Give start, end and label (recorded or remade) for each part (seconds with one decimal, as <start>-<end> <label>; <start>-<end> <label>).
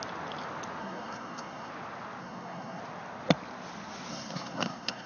0.0-0.8 recorded; 0.8-1.7 remade; 1.7-2.2 recorded; 2.2-2.8 remade; 2.8-4.1 recorded; 4.1-5.1 remade